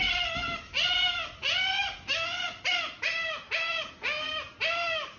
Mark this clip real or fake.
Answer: real